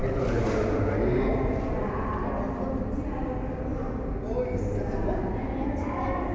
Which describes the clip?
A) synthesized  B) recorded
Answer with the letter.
B